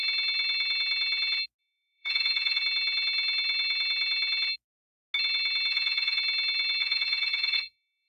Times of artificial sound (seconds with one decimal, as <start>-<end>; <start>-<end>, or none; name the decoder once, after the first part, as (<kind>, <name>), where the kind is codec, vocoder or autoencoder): 1.6-2.6 (vocoder, Vocos); 5.7-6.2; 6.8-8.1